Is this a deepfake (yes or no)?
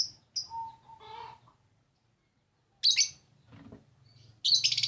no